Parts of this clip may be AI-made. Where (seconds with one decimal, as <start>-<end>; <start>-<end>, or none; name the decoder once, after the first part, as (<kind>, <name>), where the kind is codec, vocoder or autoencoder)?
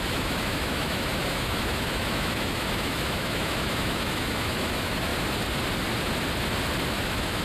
0.0-5.1 (autoencoder, DAC-VAE); 6.9-7.4